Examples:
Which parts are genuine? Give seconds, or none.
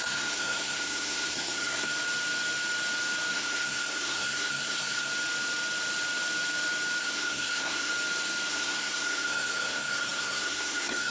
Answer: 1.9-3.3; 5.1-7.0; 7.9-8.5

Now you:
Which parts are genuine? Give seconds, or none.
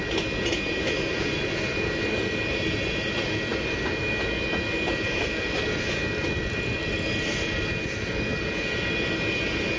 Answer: 0.0-9.8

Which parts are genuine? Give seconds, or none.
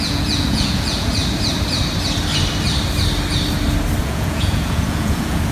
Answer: 1.2-4.0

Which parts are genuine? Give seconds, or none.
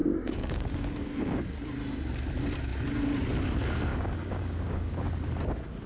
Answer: 1.6-3.9; 5.1-5.9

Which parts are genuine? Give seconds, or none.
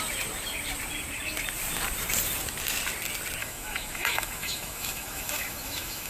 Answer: 0.0-3.4